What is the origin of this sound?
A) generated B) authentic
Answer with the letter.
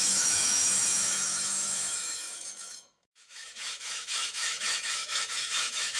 A